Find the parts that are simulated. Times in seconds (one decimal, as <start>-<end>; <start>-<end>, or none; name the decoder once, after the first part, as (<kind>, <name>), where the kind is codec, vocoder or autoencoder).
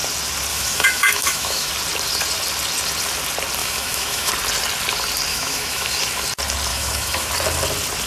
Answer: 0.5-1.7 (autoencoder, DAC-VAE); 3.6-4.3; 5.3-6.0; 6.7-7.3